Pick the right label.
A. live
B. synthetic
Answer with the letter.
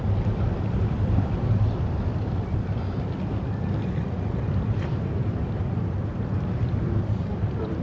B